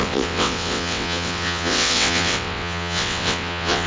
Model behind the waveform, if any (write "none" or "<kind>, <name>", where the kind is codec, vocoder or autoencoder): vocoder, WaveNeXt